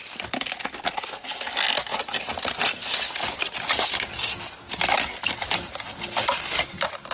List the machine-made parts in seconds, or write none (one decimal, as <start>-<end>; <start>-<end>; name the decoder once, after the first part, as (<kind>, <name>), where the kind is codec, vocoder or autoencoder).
none